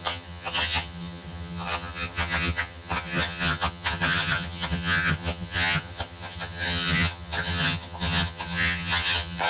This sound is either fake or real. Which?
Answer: fake